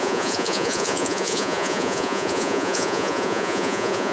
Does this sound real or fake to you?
fake